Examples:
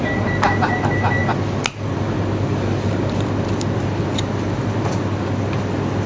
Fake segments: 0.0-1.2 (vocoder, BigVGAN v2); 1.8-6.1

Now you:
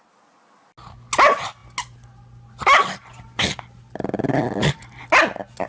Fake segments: none

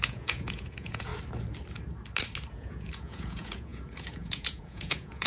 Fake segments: 0.0-1.1 (vocoder, Vocos); 2.5-5.3

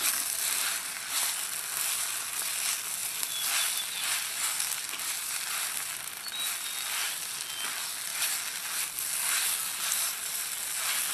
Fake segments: 4.5-5.0 (codec, SNAC)

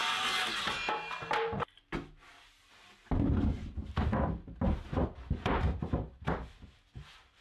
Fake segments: none

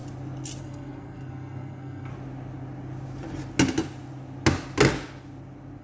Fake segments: 0.6-2.1 (codec, SNAC)

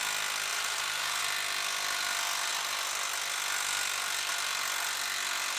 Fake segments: 0.5-1.2 (vocoder, BigVGAN v2)

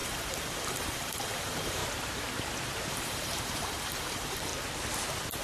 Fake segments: 0.0-1.8 (vocoder, BigVGAN v2); 2.9-4.5